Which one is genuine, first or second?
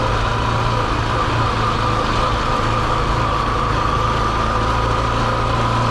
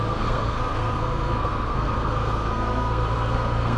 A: first